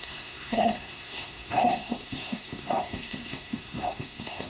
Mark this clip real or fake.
fake